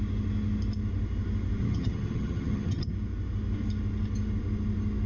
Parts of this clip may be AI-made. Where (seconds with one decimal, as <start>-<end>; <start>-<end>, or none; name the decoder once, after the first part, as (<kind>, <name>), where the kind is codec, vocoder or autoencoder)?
1.6-2.9 (vocoder, HiFi-GAN)